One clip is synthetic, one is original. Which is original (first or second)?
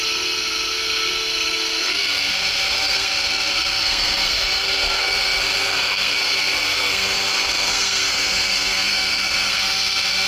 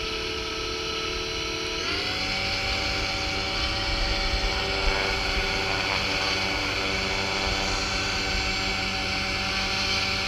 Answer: second